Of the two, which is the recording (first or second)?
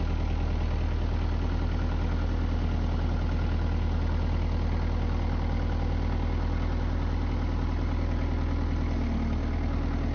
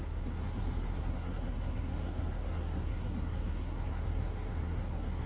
first